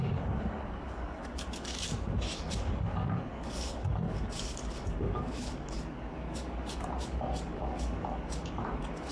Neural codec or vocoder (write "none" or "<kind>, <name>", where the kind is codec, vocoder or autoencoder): codec, DAC